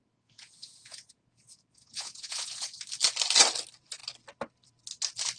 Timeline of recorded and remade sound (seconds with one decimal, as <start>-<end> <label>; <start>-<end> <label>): 0.0-2.8 remade; 2.8-5.4 recorded